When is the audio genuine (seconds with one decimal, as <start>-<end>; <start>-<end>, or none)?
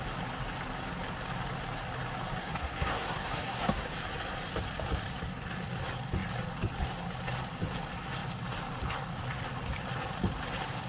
0.0-2.4; 3.9-10.9